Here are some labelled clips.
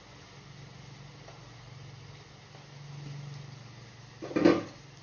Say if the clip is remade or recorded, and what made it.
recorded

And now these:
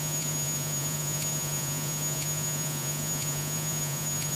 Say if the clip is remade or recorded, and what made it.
remade, vocoder, Vocos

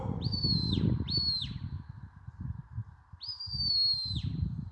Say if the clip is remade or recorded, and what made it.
recorded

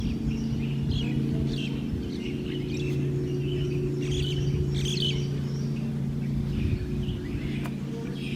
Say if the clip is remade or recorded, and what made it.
recorded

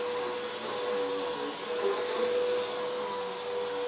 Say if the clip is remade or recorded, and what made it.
recorded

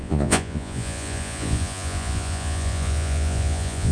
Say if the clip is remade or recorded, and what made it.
remade, vocoder, Vocos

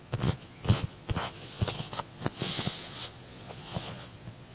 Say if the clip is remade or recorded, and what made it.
remade, vocoder, Vocos